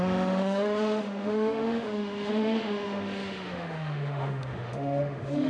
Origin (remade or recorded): remade